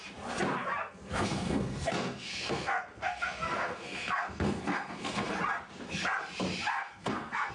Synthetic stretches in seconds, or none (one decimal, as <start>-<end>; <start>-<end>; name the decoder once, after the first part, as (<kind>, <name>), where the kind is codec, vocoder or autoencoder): 0.8-5.3 (codec, SNAC); 6.7-7.5